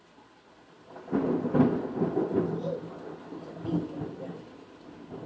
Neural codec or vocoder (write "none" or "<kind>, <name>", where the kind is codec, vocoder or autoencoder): none